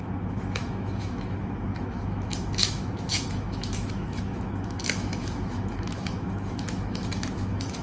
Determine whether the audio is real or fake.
fake